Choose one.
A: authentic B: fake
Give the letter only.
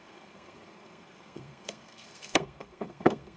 B